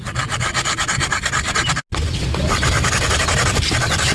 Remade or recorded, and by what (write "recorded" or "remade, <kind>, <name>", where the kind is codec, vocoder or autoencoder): recorded